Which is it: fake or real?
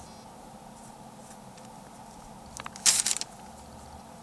real